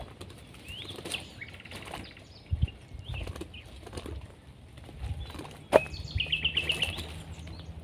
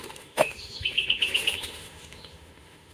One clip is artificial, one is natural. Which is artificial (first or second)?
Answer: second